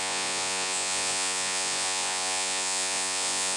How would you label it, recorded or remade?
remade